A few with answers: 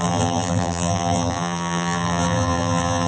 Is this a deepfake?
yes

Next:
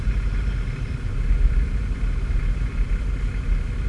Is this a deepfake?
yes